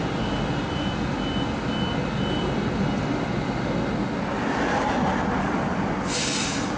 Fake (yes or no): no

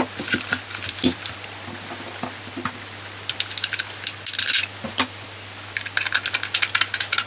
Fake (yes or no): no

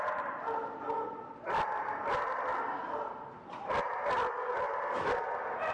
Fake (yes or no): no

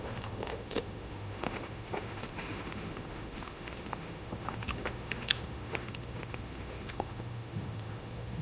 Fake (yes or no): yes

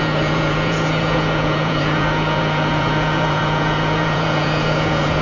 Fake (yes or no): yes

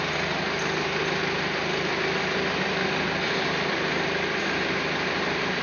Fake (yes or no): no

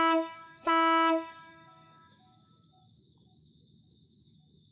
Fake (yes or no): yes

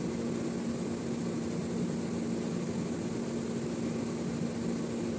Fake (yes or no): no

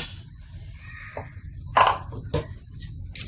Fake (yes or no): no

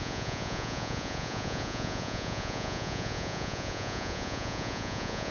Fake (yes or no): yes